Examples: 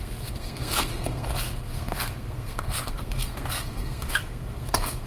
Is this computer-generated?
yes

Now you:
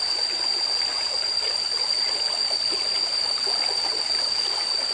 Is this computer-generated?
no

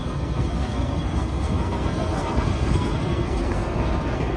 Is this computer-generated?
yes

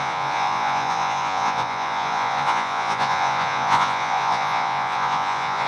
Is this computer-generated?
yes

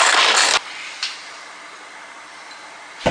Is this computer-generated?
no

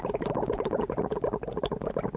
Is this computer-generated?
no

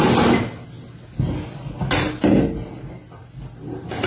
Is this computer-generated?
no